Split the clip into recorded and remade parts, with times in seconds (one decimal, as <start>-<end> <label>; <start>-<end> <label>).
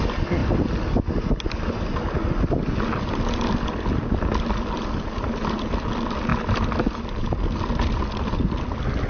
0.0-9.1 recorded